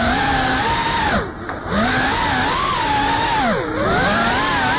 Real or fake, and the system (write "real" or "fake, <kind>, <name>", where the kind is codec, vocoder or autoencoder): real